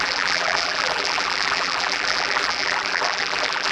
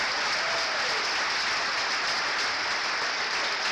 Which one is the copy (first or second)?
first